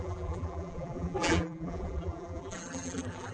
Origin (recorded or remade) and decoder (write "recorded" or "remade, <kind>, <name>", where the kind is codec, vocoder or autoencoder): remade, vocoder, BigVGAN v2